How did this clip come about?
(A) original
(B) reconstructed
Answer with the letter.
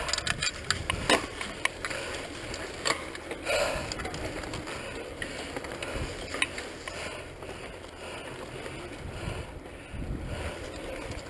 A